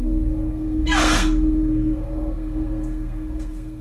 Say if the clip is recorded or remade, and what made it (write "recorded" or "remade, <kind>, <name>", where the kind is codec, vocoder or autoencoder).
remade, codec, SNAC